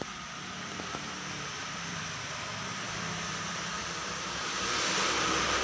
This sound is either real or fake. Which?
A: fake